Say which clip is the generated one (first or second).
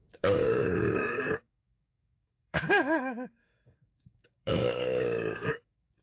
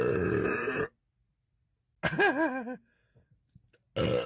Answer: first